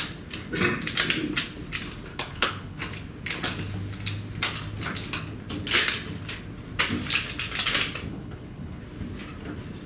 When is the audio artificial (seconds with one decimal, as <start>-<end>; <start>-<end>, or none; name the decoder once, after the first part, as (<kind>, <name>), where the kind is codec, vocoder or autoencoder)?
2.1-2.8 (codec, HILCodec); 8.1-8.8